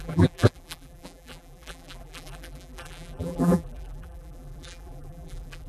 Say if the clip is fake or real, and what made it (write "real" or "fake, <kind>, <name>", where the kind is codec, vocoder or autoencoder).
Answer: fake, vocoder, BigVGAN v2